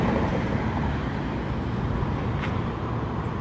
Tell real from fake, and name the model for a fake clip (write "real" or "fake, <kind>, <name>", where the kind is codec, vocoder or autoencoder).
real